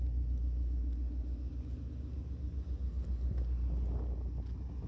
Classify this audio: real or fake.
real